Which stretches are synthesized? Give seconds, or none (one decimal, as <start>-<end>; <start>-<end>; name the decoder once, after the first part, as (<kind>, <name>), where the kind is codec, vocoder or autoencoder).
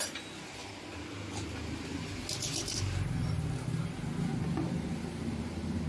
none